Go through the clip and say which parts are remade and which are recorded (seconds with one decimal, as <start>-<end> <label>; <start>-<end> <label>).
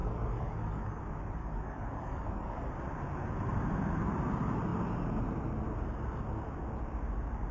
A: 0.0-1.0 remade; 1.0-1.4 recorded; 1.4-2.7 remade; 2.7-7.5 recorded